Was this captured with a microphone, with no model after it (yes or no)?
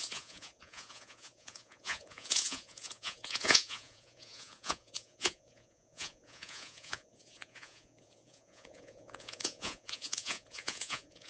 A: no